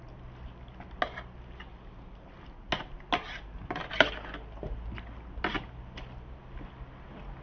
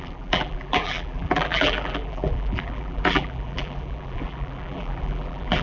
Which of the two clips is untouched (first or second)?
first